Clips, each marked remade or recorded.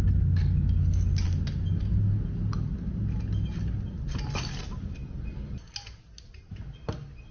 recorded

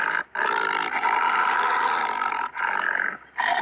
recorded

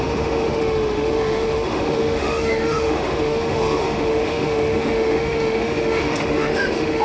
remade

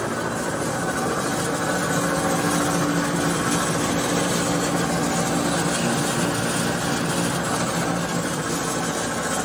recorded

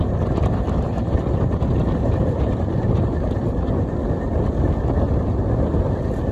recorded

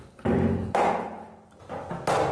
recorded